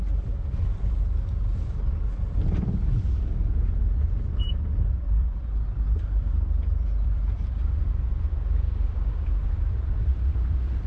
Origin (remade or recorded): remade